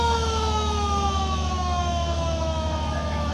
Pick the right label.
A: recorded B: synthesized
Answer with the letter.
B